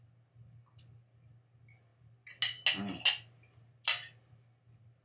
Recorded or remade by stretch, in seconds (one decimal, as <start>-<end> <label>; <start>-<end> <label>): 0.0-5.0 recorded